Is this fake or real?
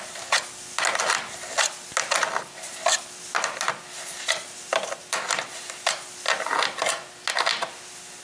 real